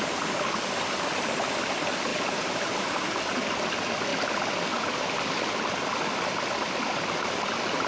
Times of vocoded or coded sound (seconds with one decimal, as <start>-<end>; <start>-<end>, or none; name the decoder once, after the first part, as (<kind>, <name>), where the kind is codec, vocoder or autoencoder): 2.1-3.1 (vocoder, BigVGAN v2)